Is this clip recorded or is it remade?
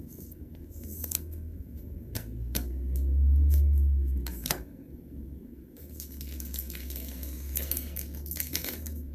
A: remade